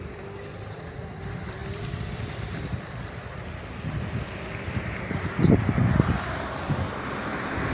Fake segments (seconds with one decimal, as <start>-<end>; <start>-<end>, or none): 0.0-7.7